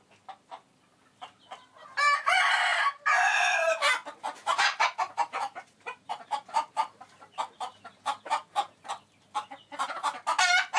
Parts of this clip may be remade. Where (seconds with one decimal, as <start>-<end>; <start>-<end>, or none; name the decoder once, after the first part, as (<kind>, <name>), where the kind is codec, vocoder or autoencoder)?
2.7-3.6 (vocoder, BigVGAN v2); 4.4-8.9